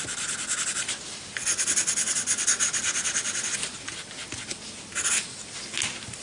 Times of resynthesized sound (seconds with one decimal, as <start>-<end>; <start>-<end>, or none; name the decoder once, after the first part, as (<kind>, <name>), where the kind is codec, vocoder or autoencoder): none